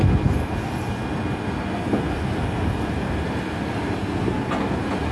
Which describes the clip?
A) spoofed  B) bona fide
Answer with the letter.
B